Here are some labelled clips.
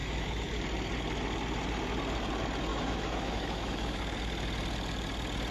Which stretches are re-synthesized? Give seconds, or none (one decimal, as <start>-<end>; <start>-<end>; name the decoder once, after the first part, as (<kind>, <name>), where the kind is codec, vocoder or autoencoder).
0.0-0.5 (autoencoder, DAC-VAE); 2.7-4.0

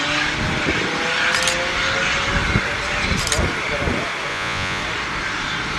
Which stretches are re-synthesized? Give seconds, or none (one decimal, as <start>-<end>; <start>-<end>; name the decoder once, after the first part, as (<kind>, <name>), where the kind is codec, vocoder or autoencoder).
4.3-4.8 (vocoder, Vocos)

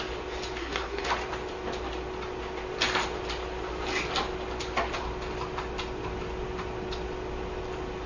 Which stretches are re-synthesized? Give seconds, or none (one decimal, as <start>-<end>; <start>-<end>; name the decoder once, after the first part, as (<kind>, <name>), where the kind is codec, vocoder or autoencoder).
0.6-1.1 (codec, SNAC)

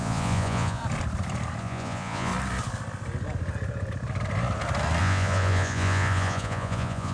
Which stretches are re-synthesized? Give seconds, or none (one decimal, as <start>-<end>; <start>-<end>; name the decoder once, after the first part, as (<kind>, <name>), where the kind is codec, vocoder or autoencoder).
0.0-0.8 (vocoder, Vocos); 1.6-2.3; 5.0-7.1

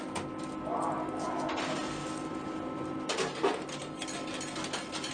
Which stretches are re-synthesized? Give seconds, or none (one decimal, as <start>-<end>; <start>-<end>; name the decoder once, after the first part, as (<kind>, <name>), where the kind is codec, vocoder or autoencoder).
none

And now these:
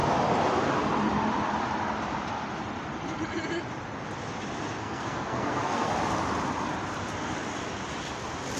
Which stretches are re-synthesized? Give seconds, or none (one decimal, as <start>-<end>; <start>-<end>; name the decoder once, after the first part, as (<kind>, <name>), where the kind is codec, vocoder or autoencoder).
4.8-5.9 (codec, SNAC)